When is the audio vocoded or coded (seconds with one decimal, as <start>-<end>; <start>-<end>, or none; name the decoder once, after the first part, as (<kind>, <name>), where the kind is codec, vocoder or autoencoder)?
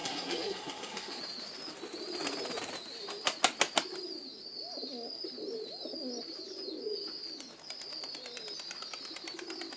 0.0-1.2 (codec, SNAC)